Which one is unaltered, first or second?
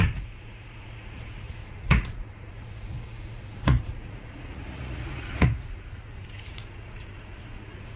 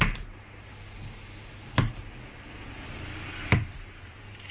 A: second